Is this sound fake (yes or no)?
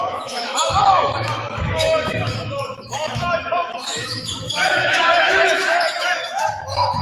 yes